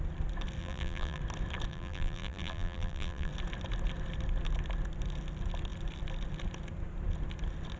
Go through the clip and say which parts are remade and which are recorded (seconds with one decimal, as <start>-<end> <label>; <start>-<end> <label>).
0.0-0.6 recorded; 0.6-1.2 remade; 1.2-1.7 recorded; 1.7-3.3 remade; 3.3-7.8 recorded